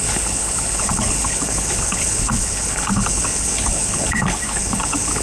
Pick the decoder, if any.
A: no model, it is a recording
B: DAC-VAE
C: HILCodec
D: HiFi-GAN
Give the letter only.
C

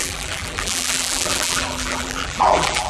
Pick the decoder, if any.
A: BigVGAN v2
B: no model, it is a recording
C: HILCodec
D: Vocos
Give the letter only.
A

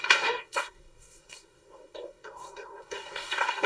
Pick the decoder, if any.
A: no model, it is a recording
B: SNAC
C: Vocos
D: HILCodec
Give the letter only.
B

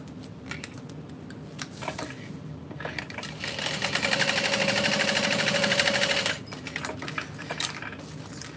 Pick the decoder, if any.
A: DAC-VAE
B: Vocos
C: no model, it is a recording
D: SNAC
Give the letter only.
C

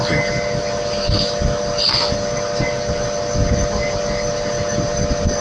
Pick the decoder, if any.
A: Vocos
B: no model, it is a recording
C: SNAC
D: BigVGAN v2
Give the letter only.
B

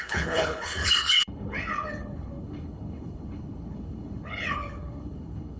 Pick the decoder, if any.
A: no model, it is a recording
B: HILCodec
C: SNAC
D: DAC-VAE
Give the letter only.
B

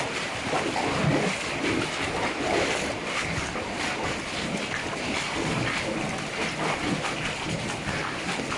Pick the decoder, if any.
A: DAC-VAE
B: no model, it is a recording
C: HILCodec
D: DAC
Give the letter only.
B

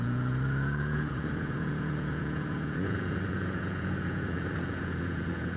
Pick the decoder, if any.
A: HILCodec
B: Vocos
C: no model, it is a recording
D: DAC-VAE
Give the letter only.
B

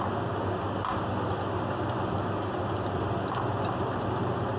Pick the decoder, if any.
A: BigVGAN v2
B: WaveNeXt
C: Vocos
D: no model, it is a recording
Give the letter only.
D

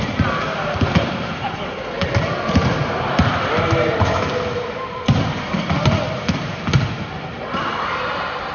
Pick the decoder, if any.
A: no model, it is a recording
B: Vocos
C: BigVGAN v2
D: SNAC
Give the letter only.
A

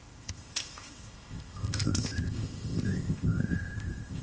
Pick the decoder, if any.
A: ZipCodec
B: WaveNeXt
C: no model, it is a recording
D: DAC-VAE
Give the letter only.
A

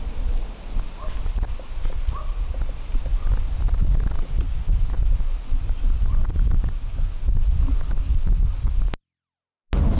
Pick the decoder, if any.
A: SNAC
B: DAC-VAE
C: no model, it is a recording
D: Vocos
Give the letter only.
C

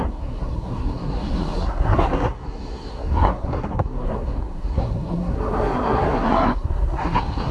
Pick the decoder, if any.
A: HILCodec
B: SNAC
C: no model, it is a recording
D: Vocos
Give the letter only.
B